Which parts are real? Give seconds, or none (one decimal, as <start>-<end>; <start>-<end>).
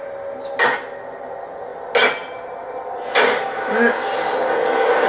0.0-5.1